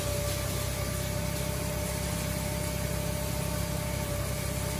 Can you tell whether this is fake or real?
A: real